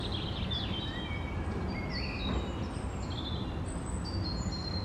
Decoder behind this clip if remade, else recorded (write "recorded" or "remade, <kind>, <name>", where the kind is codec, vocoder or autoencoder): recorded